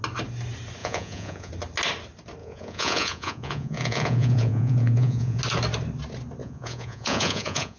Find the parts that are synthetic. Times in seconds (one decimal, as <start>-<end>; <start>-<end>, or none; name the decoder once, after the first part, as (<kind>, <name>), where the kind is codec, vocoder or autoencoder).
0.8-1.5 (vocoder, Vocos); 2.4-5.4; 6.4-7.8